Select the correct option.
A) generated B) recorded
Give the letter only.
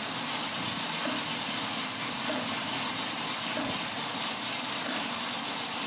A